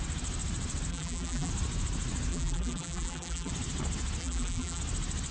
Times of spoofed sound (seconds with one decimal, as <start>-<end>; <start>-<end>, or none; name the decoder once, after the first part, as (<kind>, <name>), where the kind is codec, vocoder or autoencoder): 0.9-1.5 (vocoder, BigVGAN v2); 2.3-3.5; 4.2-4.8